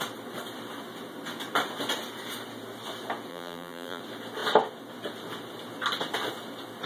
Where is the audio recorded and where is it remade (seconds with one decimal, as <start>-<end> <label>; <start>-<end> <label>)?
0.0-3.3 recorded; 3.3-4.0 remade; 4.0-6.9 recorded